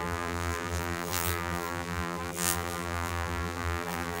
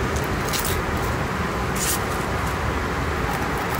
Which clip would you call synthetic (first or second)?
first